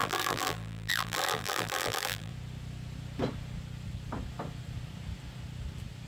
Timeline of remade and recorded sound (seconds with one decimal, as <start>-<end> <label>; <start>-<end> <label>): 0.0-2.3 remade; 2.3-6.1 recorded